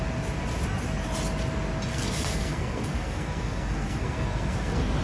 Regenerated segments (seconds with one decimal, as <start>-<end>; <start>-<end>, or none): 1.9-5.0